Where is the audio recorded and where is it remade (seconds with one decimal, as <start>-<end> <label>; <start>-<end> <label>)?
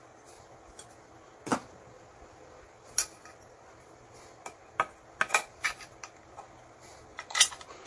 0.0-7.1 recorded; 7.1-7.9 remade